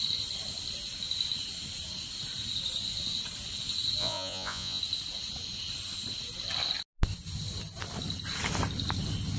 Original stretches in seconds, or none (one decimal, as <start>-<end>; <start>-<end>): 0.0-4.0; 4.8-9.4